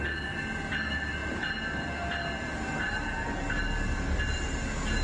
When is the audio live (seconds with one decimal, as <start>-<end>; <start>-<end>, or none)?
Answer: 0.0-5.0